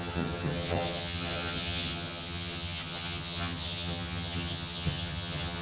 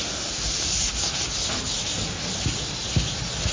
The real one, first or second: second